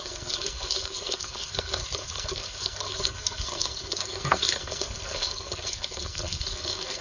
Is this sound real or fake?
fake